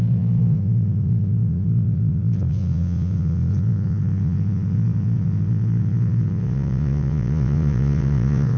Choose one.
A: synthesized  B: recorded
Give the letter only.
A